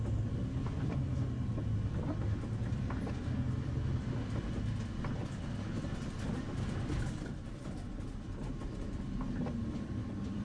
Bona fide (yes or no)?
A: yes